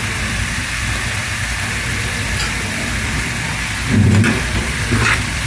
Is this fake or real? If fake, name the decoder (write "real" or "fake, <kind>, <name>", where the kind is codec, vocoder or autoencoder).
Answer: fake, vocoder, BigVGAN v2